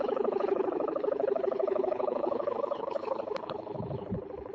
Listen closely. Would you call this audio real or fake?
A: fake